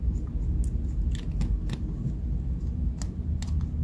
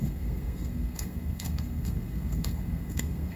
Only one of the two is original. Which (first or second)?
first